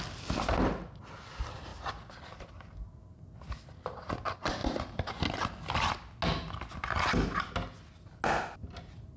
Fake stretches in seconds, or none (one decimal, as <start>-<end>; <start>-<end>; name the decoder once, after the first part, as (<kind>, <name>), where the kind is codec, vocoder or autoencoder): none